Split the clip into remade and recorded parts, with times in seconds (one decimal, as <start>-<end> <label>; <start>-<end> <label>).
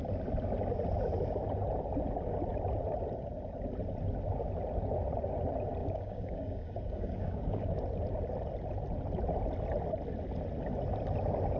0.0-5.8 recorded; 5.8-7.8 remade; 7.8-11.6 recorded